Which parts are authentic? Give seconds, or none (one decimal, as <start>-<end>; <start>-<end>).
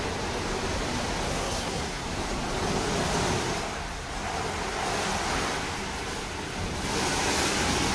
0.0-1.3; 2.0-7.9